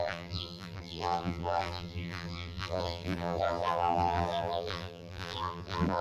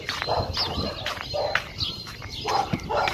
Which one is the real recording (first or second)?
second